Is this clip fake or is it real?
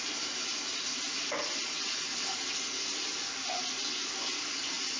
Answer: real